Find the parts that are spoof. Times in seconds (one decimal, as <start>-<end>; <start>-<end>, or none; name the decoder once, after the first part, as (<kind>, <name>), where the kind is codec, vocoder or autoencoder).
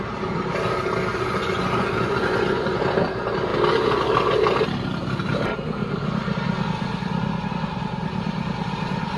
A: 1.1-2.8 (vocoder, Vocos)